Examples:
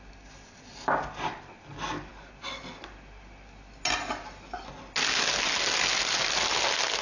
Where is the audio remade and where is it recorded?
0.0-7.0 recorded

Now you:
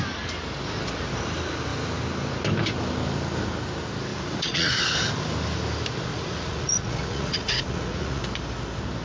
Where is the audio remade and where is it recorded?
0.0-4.1 recorded; 4.1-4.8 remade; 4.8-6.1 recorded; 6.1-8.2 remade; 8.2-9.0 recorded

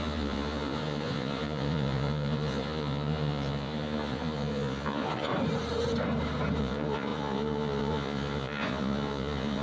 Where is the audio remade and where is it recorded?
0.0-5.3 remade; 5.3-6.6 recorded; 6.6-9.6 remade

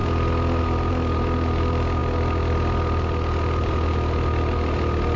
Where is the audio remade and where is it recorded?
0.0-5.2 recorded

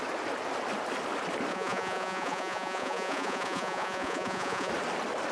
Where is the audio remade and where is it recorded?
0.0-1.5 recorded; 1.5-4.7 remade; 4.7-5.3 recorded

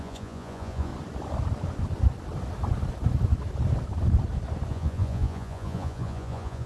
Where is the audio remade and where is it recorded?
0.0-0.9 remade; 0.9-4.7 recorded; 4.7-6.7 remade

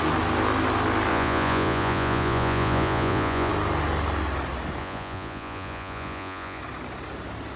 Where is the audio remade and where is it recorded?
0.0-1.1 recorded; 1.1-3.5 remade; 3.5-4.8 recorded; 4.8-6.6 remade; 6.6-7.6 recorded

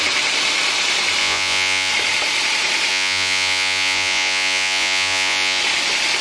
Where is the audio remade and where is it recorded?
0.0-1.2 recorded; 1.2-1.9 remade; 1.9-2.9 recorded; 2.9-5.6 remade; 5.6-6.2 recorded